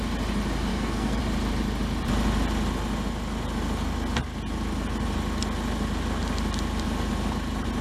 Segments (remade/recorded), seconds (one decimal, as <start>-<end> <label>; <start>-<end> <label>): 0.0-0.7 recorded; 0.7-1.2 remade; 1.2-7.8 recorded